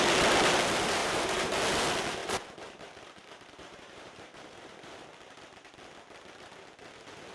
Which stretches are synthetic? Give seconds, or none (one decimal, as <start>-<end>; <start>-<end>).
1.0-1.6; 2.2-5.0